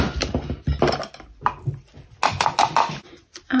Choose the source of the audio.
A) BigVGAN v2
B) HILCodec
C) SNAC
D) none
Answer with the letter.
D